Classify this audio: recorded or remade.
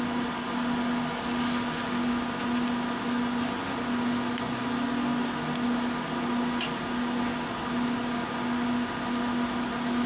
recorded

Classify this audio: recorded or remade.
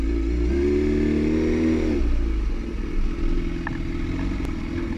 recorded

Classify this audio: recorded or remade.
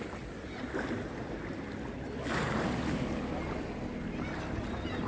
recorded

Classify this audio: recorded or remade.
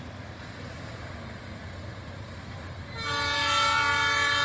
recorded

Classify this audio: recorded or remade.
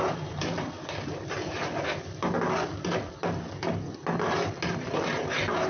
recorded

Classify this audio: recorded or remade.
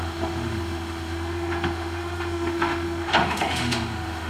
remade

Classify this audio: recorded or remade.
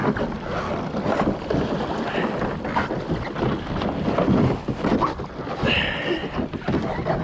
recorded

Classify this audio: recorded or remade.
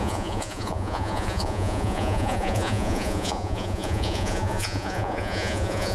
remade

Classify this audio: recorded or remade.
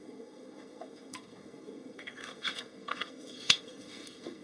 remade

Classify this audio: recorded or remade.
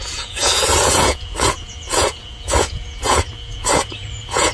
remade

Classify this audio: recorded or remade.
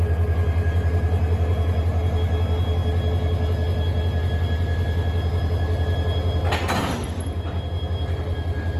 recorded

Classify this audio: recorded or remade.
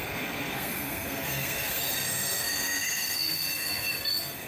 remade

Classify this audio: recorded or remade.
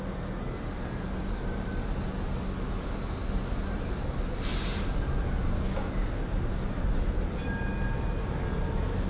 recorded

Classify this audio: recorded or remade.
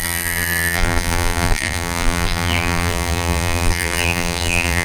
remade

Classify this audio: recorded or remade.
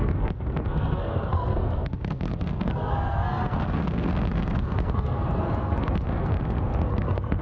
remade